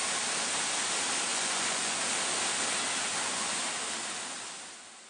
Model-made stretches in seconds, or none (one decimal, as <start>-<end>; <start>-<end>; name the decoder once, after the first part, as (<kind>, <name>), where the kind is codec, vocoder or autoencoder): 1.3-2.0 (vocoder, Vocos); 3.1-3.6